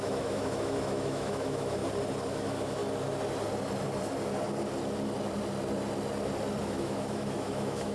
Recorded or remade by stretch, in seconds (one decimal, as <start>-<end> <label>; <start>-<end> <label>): 0.0-1.8 remade; 1.8-2.3 recorded; 2.3-2.8 remade; 2.8-6.6 recorded; 6.6-7.9 remade